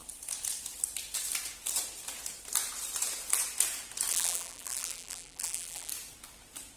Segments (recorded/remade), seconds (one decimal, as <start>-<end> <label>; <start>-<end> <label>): 0.0-4.1 recorded; 4.1-5.9 remade; 5.9-6.8 recorded